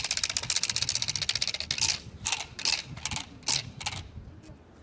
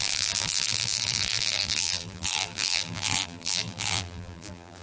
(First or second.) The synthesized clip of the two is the second